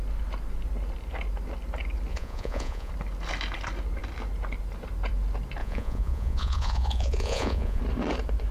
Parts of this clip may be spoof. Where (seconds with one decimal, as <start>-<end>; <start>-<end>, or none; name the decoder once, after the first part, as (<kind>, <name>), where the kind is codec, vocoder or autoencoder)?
2.1-2.9 (vocoder, Vocos); 5.6-7.8